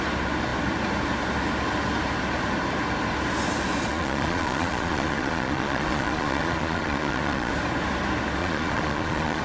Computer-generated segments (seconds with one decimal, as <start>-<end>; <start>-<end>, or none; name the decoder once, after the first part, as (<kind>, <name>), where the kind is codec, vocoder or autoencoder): 3.9-7.5 (vocoder, Vocos); 8.4-9.4